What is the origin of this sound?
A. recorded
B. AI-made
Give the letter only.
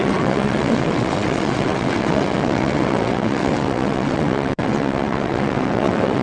B